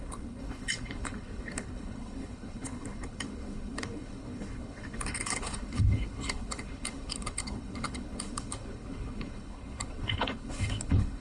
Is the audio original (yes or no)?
no